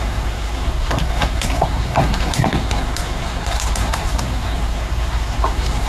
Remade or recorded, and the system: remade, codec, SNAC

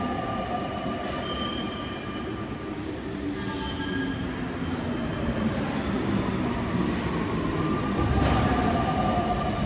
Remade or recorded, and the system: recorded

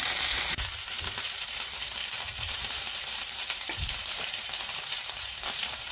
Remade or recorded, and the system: remade, vocoder, BigVGAN v2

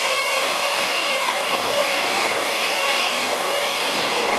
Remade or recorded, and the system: remade, codec, DAC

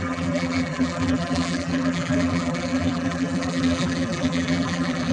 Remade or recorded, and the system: remade, vocoder, BigVGAN v2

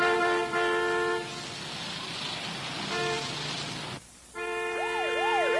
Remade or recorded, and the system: recorded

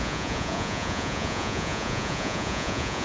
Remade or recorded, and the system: remade, vocoder, Vocos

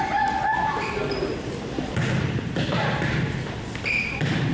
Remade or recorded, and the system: recorded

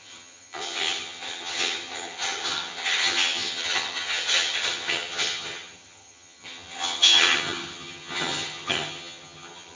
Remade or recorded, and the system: remade, vocoder, HiFi-GAN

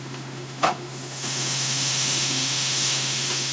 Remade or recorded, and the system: remade, autoencoder, DAC-VAE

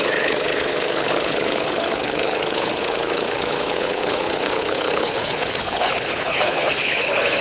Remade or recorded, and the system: remade, codec, HILCodec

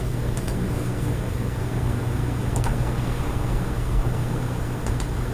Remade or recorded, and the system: remade, codec, SNAC